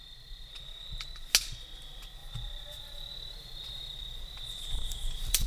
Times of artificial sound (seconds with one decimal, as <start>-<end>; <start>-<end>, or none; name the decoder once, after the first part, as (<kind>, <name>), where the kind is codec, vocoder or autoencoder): 2.2-5.5 (vocoder, BigVGAN v2)